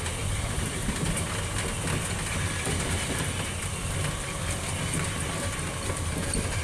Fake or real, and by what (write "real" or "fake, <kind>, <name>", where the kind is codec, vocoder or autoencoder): real